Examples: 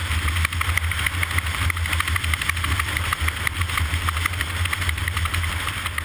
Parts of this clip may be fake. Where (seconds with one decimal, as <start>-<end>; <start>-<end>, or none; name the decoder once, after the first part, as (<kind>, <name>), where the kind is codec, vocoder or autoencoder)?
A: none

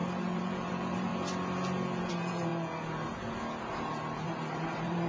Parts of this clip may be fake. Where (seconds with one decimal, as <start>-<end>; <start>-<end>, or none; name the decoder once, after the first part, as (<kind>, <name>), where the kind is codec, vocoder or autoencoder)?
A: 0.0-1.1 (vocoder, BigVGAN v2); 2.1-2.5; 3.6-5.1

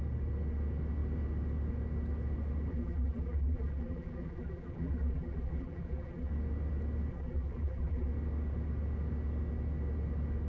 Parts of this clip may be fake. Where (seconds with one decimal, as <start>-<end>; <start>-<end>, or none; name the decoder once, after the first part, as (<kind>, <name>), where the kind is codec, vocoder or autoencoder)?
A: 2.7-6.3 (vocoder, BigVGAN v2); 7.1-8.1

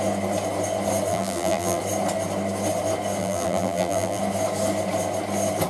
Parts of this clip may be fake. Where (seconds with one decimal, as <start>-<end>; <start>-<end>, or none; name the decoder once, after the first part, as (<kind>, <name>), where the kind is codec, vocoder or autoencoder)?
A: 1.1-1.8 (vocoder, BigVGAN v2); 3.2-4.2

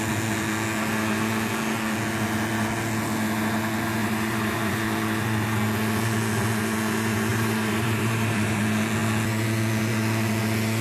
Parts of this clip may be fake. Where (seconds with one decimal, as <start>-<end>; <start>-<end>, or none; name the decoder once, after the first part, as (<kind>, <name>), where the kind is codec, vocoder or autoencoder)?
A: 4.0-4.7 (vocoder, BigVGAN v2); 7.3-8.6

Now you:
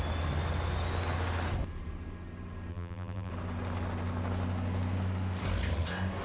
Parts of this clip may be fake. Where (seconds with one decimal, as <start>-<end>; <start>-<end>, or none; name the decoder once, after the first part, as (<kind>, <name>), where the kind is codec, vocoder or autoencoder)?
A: 2.7-3.3 (vocoder, BigVGAN v2)

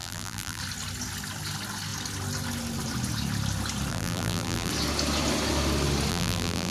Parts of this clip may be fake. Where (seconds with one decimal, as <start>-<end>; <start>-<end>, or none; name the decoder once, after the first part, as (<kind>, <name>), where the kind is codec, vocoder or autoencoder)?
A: 0.0-0.6 (vocoder, BigVGAN v2); 3.9-4.7; 6.1-6.7

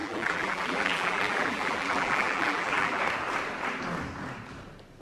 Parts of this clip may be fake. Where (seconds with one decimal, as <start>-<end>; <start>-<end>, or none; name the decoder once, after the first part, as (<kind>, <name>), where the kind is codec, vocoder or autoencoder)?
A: 0.0-3.0 (vocoder, BigVGAN v2)